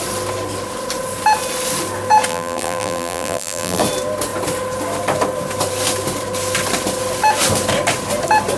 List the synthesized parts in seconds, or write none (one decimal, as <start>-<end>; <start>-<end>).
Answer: 2.3-3.8